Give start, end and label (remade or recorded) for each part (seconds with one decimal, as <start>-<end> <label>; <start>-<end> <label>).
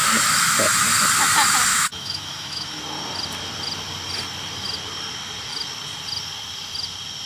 0.0-1.7 recorded; 1.7-2.8 remade; 2.8-7.3 recorded